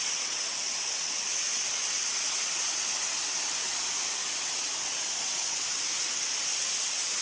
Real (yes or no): no